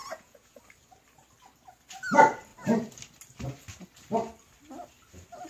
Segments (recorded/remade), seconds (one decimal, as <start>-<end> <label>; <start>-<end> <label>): 0.0-0.6 remade; 0.6-5.5 recorded